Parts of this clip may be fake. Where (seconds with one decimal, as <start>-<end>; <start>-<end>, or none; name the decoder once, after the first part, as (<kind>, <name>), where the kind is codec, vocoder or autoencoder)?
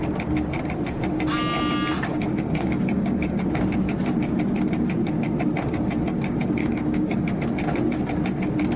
2.1-3.5 (codec, DAC); 6.6-7.4